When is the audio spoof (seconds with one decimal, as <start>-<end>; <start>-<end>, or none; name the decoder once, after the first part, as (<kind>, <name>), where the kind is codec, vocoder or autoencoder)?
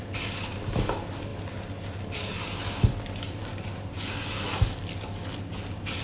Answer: none